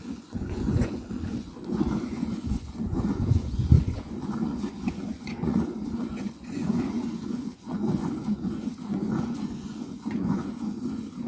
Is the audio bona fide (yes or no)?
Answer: no